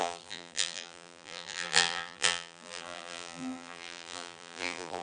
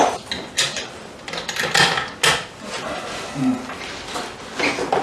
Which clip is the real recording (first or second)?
second